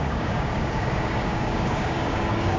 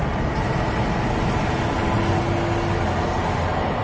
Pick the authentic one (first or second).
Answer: second